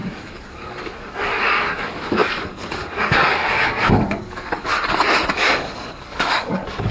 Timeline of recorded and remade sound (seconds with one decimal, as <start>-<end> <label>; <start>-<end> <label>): 0.0-4.7 remade; 4.7-5.3 recorded; 5.3-6.9 remade